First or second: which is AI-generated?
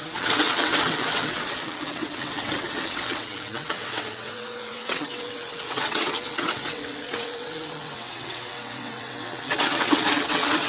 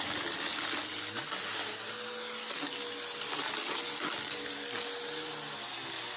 first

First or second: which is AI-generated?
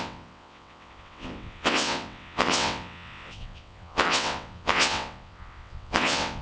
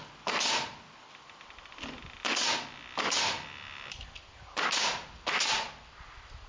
first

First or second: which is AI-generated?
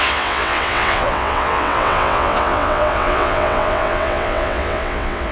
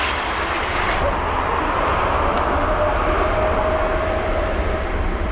first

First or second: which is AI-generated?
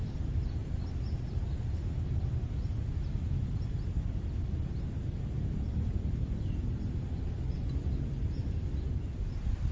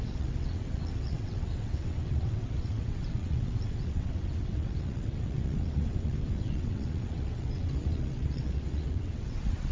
second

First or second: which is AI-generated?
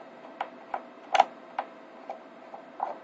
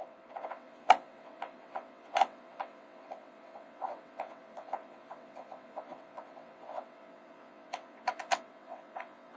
second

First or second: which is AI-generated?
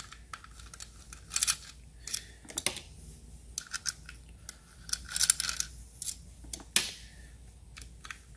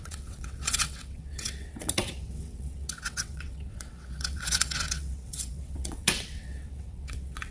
second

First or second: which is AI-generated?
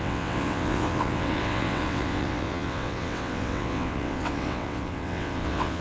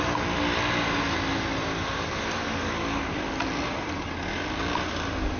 first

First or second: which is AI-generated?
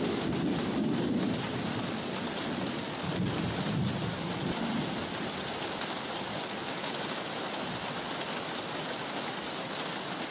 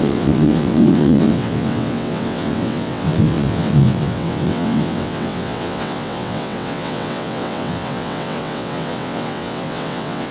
second